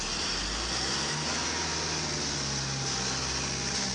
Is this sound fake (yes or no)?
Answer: no